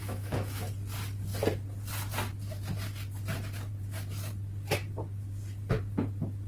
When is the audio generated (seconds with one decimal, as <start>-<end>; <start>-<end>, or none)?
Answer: 0.0-0.7